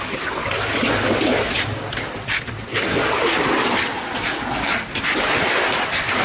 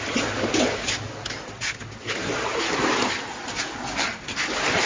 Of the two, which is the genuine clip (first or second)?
second